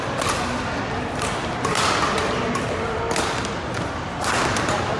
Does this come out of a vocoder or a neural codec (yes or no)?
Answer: no